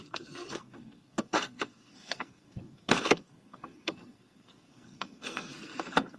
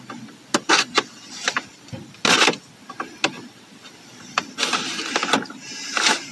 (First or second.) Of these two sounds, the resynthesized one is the first